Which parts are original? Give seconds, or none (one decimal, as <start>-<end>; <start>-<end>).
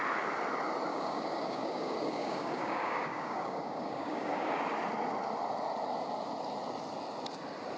0.0-0.9; 4.5-7.8